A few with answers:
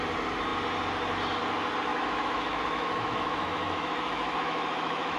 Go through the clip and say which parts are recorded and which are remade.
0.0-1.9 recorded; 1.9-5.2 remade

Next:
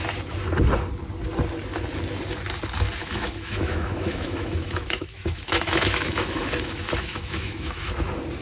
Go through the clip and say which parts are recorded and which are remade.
0.0-3.0 recorded; 3.0-7.9 remade; 7.9-8.4 recorded